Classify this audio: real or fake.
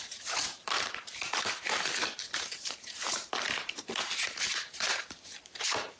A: fake